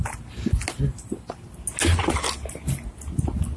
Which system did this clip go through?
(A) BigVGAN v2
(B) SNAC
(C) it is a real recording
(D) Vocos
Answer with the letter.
C